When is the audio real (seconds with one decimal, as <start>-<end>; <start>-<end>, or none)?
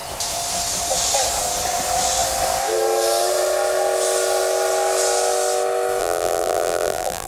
0.0-6.0